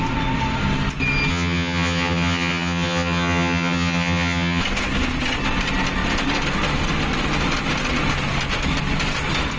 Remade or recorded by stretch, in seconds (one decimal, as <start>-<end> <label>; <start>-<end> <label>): 0.0-1.3 recorded; 1.3-4.6 remade; 4.6-9.6 recorded